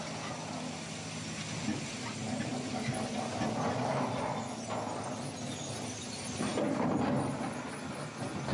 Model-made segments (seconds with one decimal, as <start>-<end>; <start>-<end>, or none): none